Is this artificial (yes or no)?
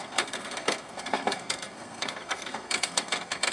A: yes